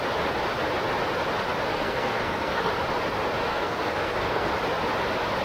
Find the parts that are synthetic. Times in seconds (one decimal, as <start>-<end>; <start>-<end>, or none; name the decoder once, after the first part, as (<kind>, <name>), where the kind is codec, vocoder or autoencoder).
1.7-2.7 (codec, SNAC); 3.5-4.5